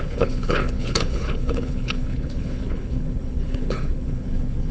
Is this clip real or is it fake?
fake